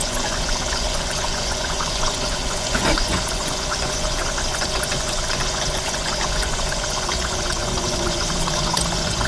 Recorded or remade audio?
remade